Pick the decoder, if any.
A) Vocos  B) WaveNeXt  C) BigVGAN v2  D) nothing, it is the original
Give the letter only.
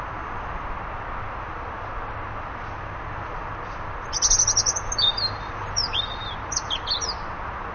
D